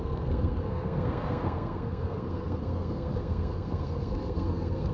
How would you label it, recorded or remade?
remade